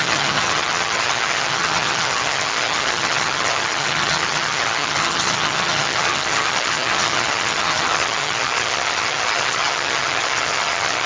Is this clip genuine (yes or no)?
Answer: no